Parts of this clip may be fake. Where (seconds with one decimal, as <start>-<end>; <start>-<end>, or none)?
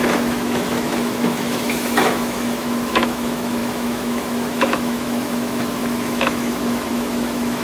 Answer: 0.0-7.6